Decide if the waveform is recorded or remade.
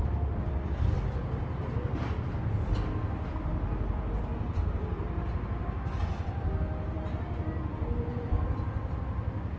recorded